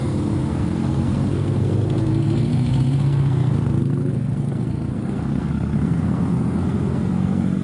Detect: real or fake fake